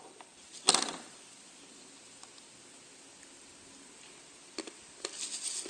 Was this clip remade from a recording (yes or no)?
no